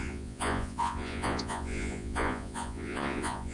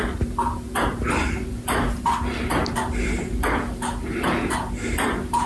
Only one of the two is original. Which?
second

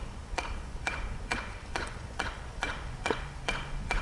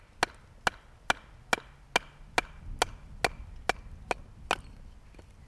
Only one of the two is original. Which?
second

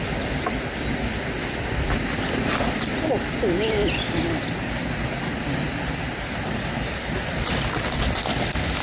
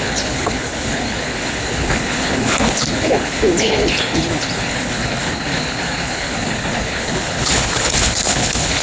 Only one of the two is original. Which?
first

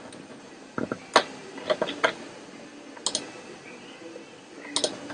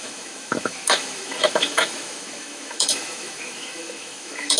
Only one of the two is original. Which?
first